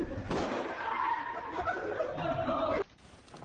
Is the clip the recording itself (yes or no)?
no